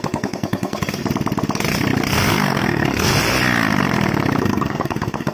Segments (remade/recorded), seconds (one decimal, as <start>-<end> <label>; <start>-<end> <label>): 0.0-1.0 remade; 1.0-2.1 recorded; 2.1-3.1 remade; 3.1-4.4 recorded; 4.4-5.3 remade

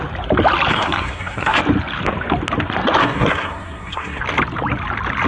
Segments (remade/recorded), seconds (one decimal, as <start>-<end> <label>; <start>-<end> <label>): 0.0-0.7 recorded; 0.7-1.6 remade; 1.6-3.0 recorded; 3.0-4.2 remade; 4.2-5.3 recorded